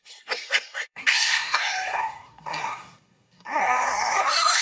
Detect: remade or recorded remade